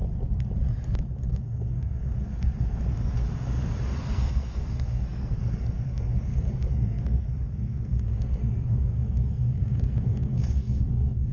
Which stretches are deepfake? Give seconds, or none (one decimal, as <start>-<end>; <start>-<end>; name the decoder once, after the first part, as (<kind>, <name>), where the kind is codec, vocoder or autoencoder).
1.3-2.8 (codec, SNAC); 4.0-11.3